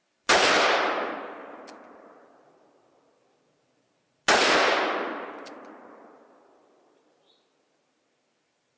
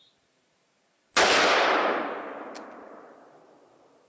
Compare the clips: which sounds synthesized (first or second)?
first